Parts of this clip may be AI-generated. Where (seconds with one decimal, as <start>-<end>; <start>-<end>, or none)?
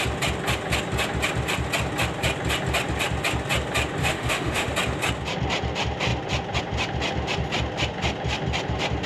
4.0-4.7